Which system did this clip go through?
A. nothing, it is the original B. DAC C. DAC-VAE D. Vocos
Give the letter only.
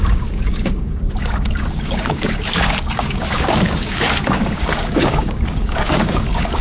B